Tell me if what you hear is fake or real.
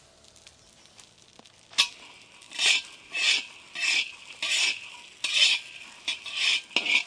real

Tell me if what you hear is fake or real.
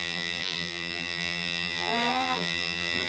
fake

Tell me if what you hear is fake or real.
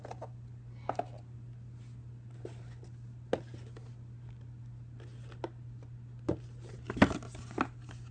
real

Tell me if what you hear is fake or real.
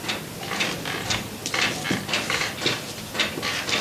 real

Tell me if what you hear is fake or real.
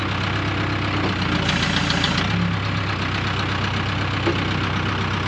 real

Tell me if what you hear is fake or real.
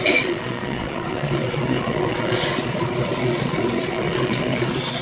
fake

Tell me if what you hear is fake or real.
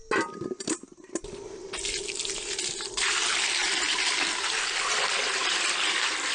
real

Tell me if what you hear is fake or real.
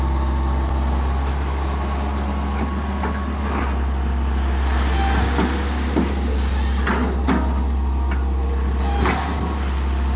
real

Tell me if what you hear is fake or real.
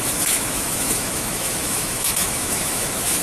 fake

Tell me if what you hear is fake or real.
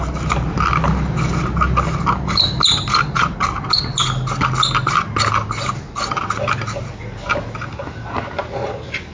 real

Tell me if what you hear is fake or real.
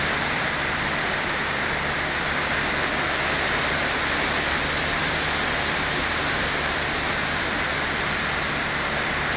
real